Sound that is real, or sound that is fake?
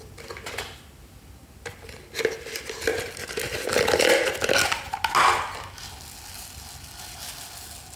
real